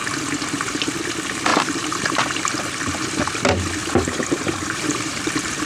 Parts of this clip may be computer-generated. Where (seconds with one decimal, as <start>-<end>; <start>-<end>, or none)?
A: 1.5-2.6; 3.8-5.7